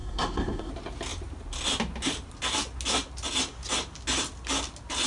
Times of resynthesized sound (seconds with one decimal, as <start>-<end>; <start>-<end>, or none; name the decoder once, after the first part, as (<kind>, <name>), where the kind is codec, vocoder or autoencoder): 0.0-0.7 (codec, SNAC)